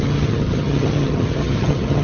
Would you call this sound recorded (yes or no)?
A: no